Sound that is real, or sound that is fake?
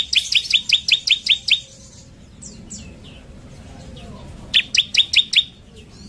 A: real